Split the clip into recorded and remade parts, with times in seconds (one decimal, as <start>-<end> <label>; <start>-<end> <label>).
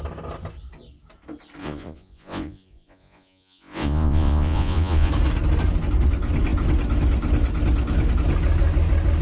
0.0-1.6 recorded; 1.6-5.1 remade; 5.1-9.2 recorded